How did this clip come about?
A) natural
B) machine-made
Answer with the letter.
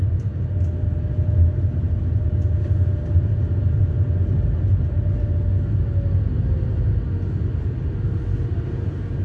A